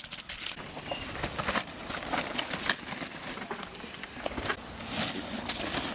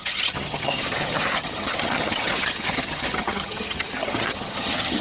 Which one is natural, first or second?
first